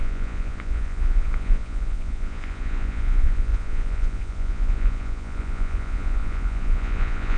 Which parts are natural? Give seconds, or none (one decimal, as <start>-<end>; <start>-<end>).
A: none